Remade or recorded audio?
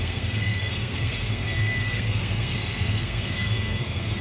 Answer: remade